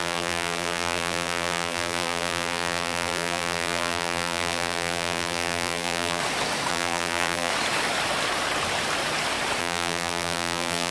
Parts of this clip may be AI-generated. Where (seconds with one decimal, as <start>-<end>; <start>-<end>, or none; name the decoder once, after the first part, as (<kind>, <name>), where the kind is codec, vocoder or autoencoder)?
0.0-6.2 (vocoder, BigVGAN v2); 6.7-7.5; 9.6-10.9